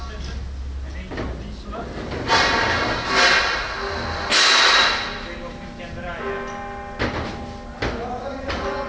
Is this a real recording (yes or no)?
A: yes